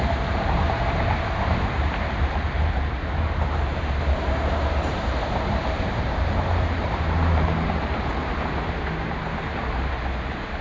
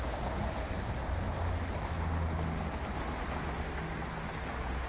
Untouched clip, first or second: second